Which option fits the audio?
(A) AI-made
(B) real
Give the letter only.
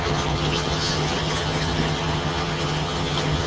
A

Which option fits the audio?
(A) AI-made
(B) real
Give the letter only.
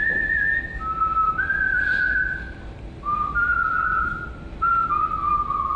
B